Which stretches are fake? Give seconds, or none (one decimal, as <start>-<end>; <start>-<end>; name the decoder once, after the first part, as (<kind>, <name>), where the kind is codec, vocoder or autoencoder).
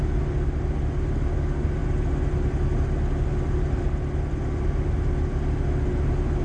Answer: none